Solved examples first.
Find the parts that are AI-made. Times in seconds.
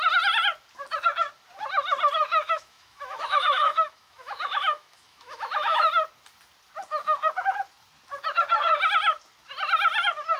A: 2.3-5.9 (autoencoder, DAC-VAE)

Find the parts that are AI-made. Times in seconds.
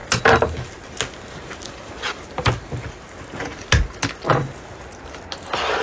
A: none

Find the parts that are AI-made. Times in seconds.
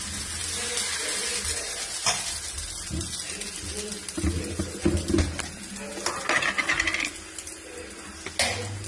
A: none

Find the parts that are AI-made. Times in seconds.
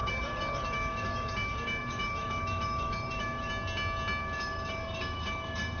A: 0.0-3.5 (autoencoder, DAC-VAE); 4.2-5.8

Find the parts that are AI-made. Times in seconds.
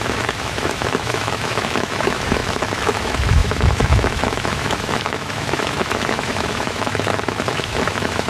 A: 0.0-8.3 (autoencoder, DAC-VAE)